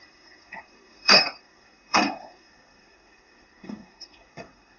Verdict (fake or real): fake